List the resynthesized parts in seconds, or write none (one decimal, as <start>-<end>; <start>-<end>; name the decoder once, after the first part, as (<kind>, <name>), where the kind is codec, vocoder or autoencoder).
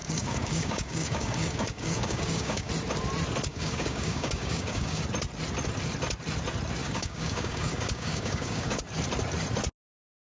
0.0-2.7 (codec, DAC); 3.5-5.0; 6.8-8.8